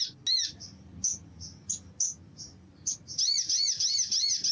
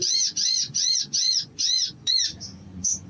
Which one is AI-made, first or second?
second